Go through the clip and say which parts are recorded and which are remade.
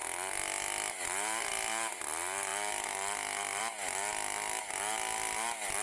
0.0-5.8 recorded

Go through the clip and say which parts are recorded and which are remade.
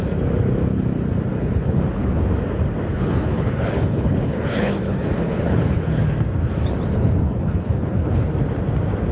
0.0-1.3 recorded; 1.3-2.2 remade; 2.2-2.9 recorded; 2.9-6.0 remade; 6.0-6.9 recorded; 6.9-8.3 remade; 8.3-9.1 recorded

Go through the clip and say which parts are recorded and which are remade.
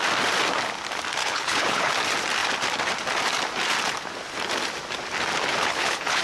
0.0-1.2 recorded; 1.2-1.9 remade; 1.9-5.6 recorded; 5.6-6.2 remade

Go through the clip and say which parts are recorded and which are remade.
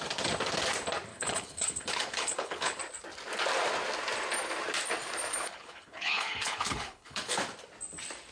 0.0-1.1 recorded; 1.1-2.8 remade; 2.8-5.5 recorded; 5.5-7.4 remade; 7.4-8.3 recorded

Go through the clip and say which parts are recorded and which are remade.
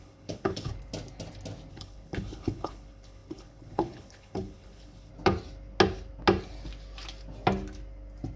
0.0-0.7 remade; 0.7-1.7 recorded; 1.7-5.1 remade; 5.1-8.4 recorded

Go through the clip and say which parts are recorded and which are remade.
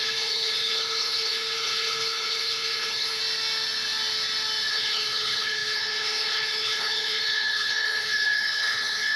0.0-3.2 remade; 3.2-4.7 recorded; 4.7-9.2 remade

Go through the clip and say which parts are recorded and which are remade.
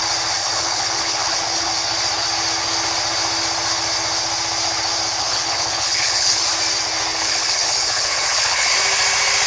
0.0-0.4 recorded; 0.4-1.7 remade; 1.7-5.2 recorded; 5.2-6.4 remade; 6.4-7.1 recorded; 7.1-8.8 remade; 8.8-9.5 recorded